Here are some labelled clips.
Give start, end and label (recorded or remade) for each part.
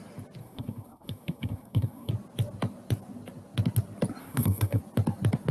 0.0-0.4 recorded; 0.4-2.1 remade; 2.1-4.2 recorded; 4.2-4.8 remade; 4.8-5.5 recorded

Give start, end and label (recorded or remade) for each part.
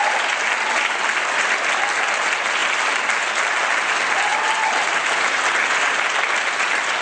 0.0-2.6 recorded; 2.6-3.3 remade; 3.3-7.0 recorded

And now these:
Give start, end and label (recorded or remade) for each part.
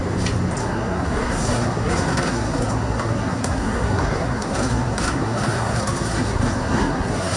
0.0-0.6 recorded; 0.6-7.4 remade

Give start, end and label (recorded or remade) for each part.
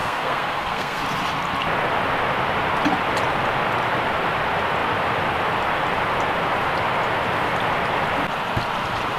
0.0-1.0 remade; 1.0-9.2 recorded